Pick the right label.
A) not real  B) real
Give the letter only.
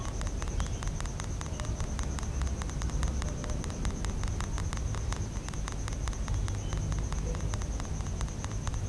B